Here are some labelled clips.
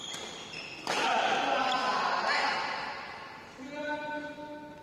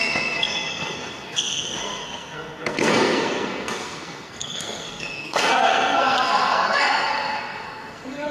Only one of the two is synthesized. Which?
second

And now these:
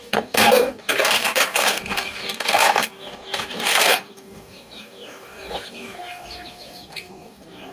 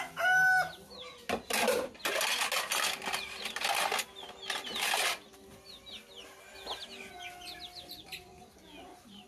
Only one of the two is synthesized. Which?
first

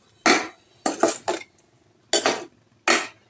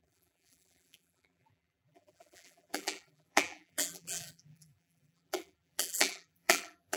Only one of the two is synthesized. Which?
second